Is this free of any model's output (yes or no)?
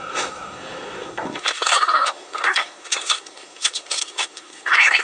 no